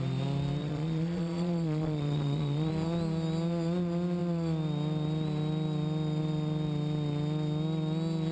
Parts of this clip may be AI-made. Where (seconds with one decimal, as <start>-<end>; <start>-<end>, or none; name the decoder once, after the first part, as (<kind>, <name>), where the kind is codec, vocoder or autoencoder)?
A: 0.6-2.7 (vocoder, Vocos)